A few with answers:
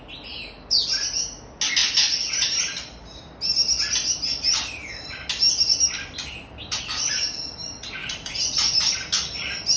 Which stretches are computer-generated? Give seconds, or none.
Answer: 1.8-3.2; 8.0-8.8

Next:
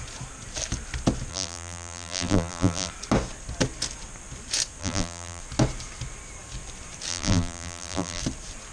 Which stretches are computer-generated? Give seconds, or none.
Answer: 1.3-2.9; 4.8-5.4; 7.1-8.2

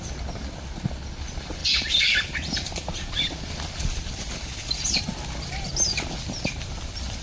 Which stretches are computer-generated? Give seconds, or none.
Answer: 1.6-5.0